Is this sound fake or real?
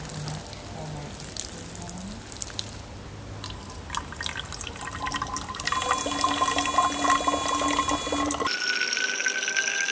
real